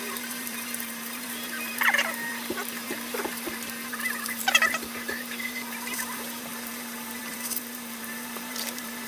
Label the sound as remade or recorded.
remade